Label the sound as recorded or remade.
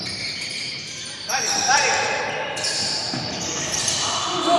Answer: remade